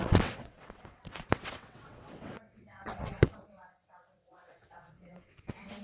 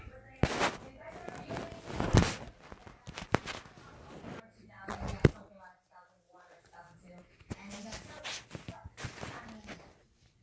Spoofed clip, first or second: first